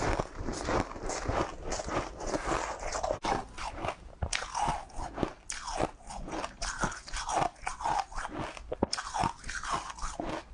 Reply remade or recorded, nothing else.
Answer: recorded